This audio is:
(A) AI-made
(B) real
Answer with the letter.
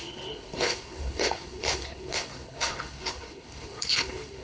A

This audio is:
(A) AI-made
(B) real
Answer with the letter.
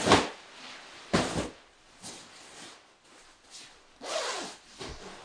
B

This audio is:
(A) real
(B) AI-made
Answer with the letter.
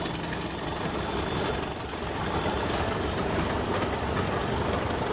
A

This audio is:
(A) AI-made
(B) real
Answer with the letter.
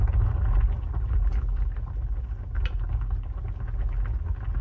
B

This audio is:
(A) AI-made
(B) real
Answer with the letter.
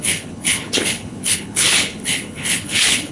A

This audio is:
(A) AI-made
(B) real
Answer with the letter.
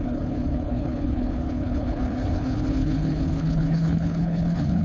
A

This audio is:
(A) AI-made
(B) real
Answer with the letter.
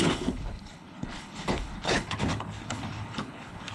A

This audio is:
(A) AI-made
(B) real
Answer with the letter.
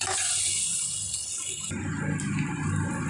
B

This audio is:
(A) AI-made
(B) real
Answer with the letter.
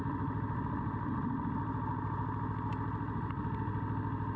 B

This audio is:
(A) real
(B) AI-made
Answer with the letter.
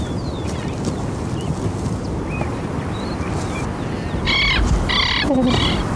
A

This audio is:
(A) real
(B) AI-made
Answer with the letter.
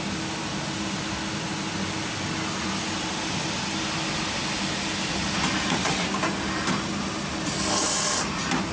A